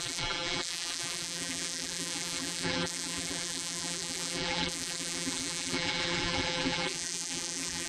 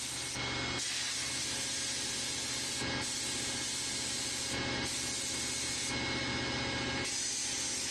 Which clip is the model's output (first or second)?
first